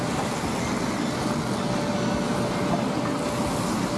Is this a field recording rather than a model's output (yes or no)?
yes